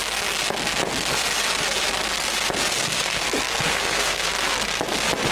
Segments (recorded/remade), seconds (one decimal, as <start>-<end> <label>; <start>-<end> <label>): 0.0-2.7 recorded; 2.7-3.2 remade; 3.2-3.7 recorded; 3.7-4.3 remade; 4.3-5.3 recorded